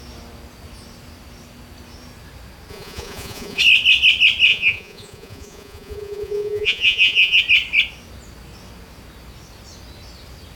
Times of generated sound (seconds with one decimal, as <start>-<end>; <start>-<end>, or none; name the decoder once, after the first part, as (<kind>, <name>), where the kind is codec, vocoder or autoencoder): 2.7-3.6 (vocoder, Vocos); 4.5-7.4